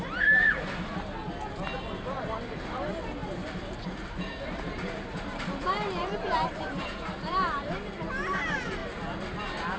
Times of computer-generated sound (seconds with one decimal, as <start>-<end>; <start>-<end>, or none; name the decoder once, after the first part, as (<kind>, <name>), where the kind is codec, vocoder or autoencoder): 3.2-7.7 (vocoder, BigVGAN v2)